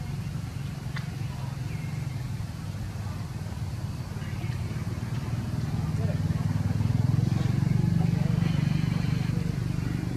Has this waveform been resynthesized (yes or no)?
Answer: no